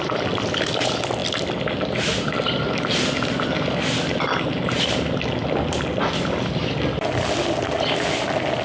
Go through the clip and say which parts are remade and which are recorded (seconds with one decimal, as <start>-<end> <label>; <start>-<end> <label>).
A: 0.0-8.6 recorded